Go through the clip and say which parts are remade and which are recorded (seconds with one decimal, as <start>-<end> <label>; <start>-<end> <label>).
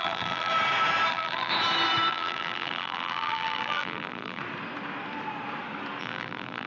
0.0-0.5 remade; 0.5-1.1 recorded; 1.1-1.5 remade; 1.5-2.1 recorded; 2.1-4.4 remade; 4.4-6.0 recorded; 6.0-6.7 remade